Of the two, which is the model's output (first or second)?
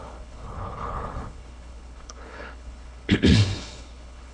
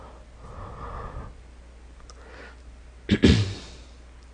first